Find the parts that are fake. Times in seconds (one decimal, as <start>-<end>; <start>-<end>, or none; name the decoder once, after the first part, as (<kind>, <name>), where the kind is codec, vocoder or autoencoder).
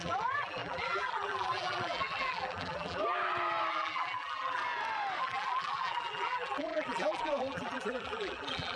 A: 0.0-3.0 (vocoder, BigVGAN v2); 3.7-4.6; 5.2-8.8